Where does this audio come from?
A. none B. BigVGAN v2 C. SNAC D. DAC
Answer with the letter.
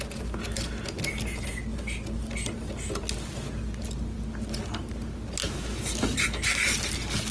A